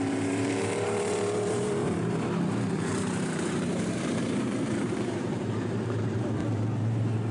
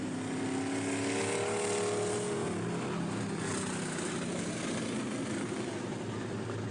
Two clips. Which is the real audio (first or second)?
second